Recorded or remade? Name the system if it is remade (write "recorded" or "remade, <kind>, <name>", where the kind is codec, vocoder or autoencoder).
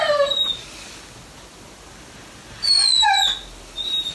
recorded